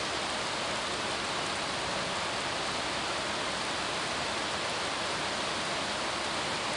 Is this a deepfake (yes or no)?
yes